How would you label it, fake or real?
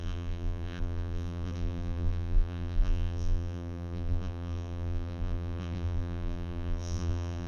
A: fake